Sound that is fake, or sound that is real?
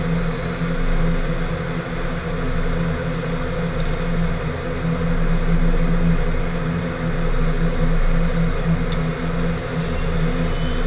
real